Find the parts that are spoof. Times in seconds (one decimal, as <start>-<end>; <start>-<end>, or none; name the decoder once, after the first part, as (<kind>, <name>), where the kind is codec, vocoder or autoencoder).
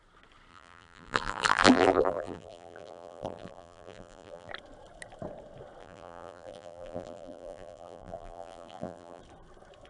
0.5-4.5 (vocoder, BigVGAN v2); 5.8-9.2